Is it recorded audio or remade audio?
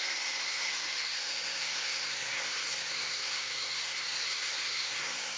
remade